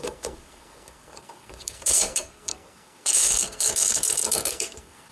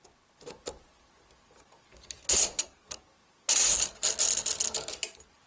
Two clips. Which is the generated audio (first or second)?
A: first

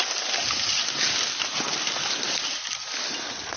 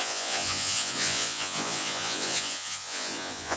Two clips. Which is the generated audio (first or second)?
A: second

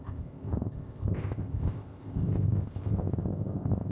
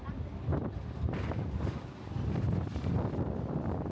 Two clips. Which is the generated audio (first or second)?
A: first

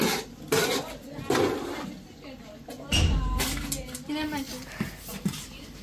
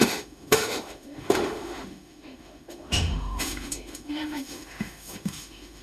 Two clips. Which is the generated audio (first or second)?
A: second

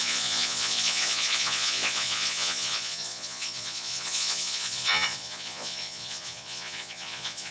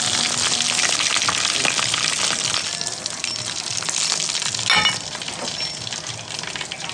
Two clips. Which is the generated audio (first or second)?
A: first